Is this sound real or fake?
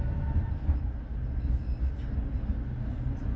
real